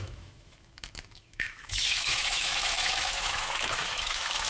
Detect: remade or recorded remade